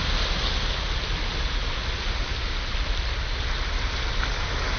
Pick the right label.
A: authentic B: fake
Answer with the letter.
A